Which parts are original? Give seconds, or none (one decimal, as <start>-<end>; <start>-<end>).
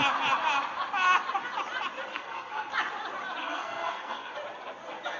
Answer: 0.0-2.1; 2.7-3.4; 4.3-5.2